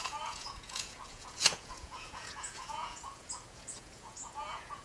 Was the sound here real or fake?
fake